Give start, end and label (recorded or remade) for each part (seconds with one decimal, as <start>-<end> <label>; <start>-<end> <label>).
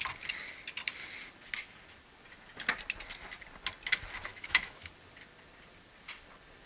0.0-4.3 recorded; 4.3-4.9 remade; 4.9-6.7 recorded